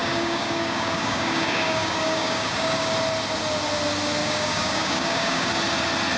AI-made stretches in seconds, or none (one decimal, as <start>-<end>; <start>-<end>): 0.0-2.9; 4.2-5.5